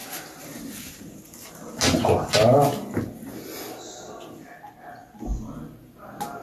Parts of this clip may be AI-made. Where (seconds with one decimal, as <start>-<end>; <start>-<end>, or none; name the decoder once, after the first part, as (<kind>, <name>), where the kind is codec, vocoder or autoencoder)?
none